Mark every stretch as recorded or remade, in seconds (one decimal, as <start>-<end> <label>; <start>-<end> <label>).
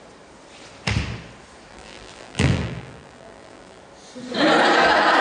0.0-1.7 recorded; 1.7-3.8 remade; 3.8-5.2 recorded